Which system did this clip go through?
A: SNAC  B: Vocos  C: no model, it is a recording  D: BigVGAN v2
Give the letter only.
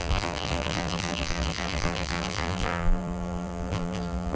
D